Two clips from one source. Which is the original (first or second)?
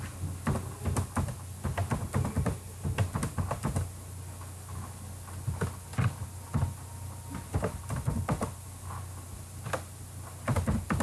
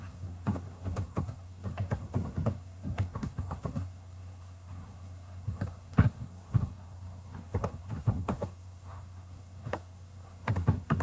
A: first